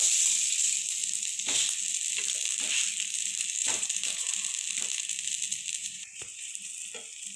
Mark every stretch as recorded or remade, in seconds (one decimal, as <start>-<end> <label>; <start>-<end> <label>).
0.0-3.6 recorded; 3.6-4.3 remade; 4.3-5.8 recorded; 5.8-6.7 remade; 6.7-7.4 recorded